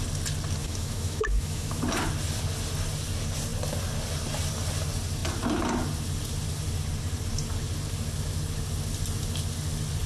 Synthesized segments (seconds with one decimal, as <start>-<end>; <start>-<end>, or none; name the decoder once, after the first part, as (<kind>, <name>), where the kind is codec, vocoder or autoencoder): 0.6-1.8 (autoencoder, DAC-VAE)